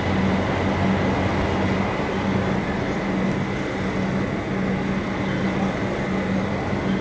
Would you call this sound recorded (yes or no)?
yes